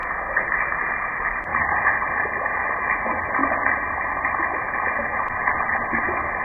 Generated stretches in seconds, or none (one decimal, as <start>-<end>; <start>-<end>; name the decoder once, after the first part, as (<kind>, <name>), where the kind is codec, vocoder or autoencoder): 1.5-2.7 (vocoder, BigVGAN v2)